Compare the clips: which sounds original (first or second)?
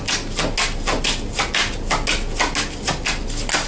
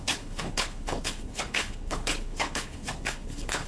first